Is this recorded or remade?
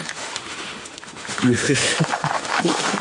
remade